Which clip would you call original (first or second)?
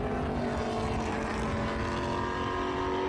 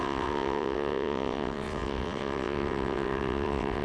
first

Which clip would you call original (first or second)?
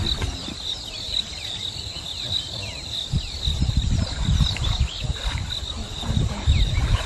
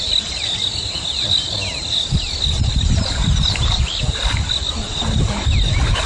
second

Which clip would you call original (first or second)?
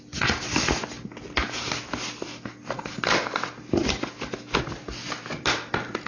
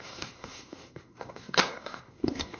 first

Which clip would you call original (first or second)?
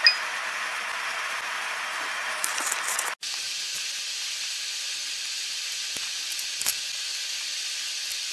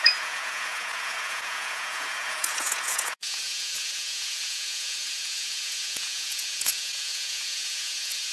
first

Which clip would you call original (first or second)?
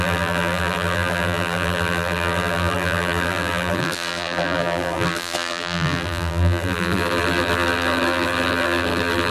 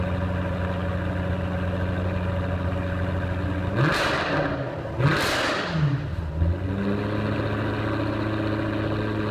second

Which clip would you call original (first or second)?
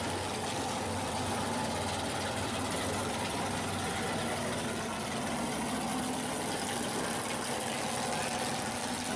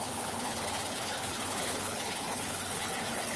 first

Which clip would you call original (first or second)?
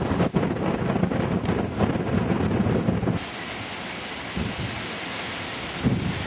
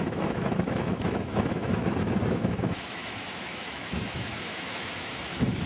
first